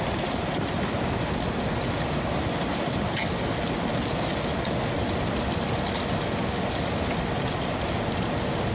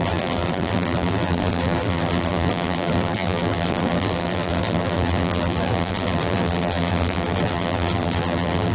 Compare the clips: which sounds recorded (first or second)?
first